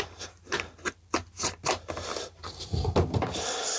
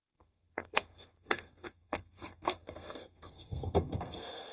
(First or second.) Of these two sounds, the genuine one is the first